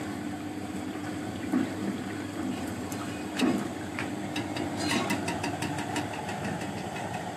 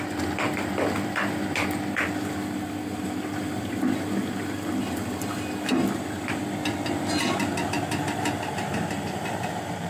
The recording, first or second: second